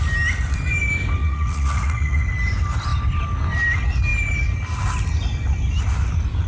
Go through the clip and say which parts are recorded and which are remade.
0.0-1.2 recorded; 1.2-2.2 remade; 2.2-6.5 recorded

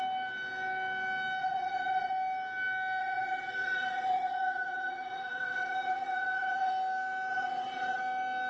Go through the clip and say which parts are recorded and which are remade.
0.0-1.4 recorded; 1.4-2.1 remade; 2.1-3.0 recorded; 3.0-6.7 remade; 6.7-7.3 recorded; 7.3-8.0 remade; 8.0-8.5 recorded